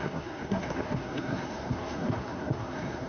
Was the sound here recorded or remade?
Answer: remade